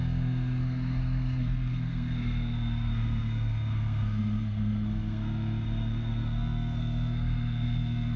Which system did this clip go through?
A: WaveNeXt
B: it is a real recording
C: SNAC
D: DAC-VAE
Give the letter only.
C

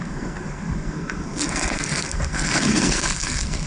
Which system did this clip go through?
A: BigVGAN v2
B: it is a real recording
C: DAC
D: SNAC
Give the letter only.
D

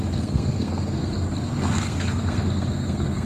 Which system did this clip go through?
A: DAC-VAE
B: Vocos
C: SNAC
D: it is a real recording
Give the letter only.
C